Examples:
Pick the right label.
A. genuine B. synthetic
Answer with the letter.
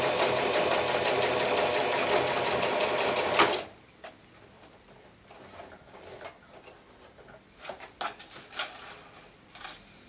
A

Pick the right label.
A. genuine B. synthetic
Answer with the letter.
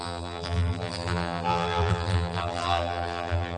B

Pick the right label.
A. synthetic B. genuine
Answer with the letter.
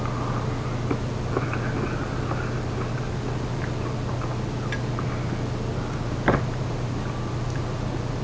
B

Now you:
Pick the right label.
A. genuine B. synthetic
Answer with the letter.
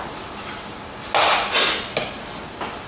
A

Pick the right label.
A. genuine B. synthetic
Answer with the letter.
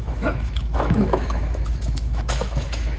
B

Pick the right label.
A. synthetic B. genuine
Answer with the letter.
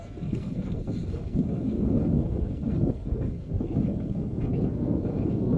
A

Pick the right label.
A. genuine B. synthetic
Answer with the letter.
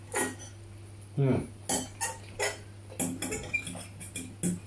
A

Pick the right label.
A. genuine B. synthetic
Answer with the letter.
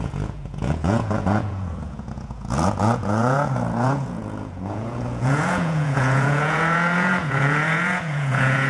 B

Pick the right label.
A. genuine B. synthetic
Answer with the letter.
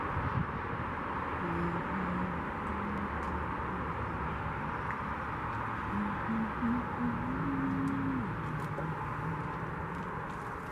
A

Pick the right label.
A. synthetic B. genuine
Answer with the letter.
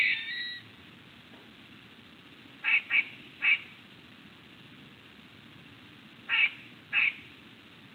B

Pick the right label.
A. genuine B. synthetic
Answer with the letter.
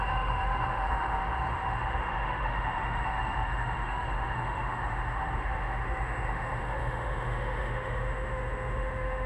B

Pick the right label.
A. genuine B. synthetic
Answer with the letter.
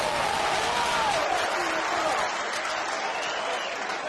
A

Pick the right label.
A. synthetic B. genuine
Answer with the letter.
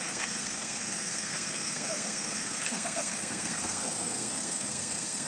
A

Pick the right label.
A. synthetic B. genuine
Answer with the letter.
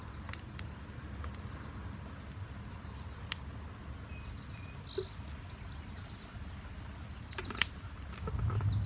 B